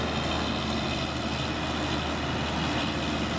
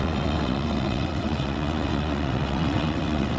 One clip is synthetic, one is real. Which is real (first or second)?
first